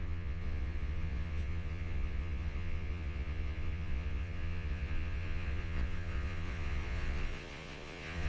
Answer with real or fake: fake